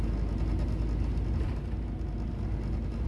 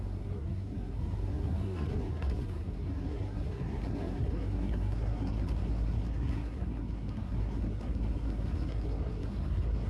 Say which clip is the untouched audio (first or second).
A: first